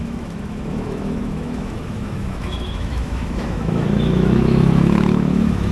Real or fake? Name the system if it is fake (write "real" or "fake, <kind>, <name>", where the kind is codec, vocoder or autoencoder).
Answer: fake, autoencoder, DAC-VAE